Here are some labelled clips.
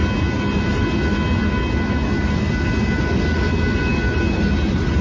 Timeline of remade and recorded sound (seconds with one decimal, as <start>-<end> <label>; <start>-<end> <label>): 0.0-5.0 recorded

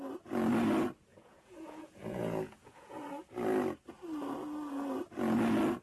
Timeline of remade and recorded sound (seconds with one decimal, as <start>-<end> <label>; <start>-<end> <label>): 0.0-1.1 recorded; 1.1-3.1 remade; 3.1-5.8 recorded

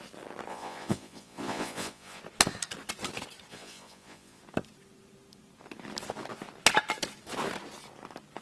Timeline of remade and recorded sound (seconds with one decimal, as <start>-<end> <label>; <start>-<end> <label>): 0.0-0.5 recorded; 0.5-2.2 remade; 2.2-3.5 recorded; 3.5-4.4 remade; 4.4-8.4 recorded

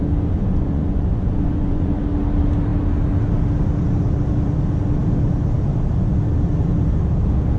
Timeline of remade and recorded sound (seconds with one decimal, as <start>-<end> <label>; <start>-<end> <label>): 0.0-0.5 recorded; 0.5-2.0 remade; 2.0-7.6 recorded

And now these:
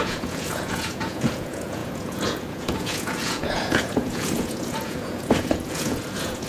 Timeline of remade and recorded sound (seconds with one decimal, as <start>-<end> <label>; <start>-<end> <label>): 0.0-6.5 remade

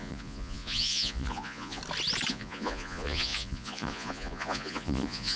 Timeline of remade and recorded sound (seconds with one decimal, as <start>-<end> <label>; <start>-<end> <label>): 0.0-1.8 remade; 1.8-2.3 recorded; 2.3-5.4 remade

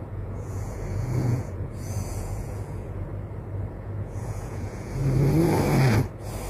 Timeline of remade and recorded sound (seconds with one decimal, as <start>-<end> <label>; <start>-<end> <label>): 0.0-3.1 remade; 3.1-3.7 recorded; 3.7-5.0 remade; 5.0-6.5 recorded

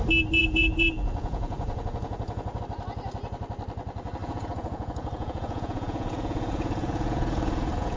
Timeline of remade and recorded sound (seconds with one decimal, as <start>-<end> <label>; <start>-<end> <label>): 0.0-0.4 recorded; 0.4-2.6 remade; 2.6-4.2 recorded; 4.2-8.0 remade